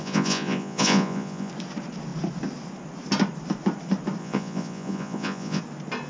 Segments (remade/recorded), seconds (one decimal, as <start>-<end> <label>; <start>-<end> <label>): 0.0-1.5 remade; 1.5-4.2 recorded; 4.2-5.6 remade; 5.6-6.1 recorded